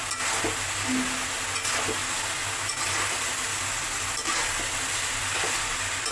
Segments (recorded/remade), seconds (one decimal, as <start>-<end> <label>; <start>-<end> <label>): 0.0-6.1 recorded